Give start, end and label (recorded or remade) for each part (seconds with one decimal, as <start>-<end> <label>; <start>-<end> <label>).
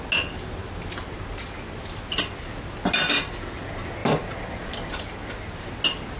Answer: 0.0-6.2 recorded